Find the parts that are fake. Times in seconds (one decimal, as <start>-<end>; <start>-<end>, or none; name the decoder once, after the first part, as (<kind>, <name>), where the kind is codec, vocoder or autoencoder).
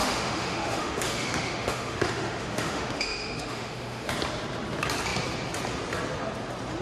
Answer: 0.0-4.1 (autoencoder, DAC-VAE)